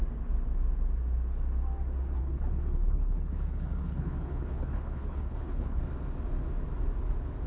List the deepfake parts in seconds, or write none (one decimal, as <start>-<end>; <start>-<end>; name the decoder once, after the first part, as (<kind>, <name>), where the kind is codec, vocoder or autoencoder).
2.2-5.8 (codec, HILCodec)